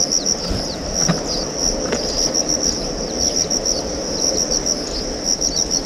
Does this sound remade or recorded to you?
recorded